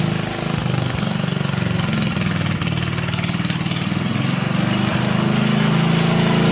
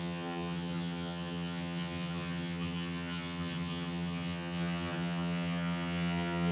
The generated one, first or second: second